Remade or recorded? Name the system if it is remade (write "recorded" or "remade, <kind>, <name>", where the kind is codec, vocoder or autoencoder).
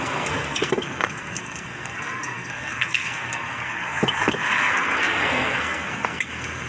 remade, codec, SNAC